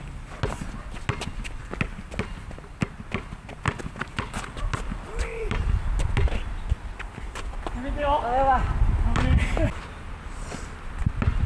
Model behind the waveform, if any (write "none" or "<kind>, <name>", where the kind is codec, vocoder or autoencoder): none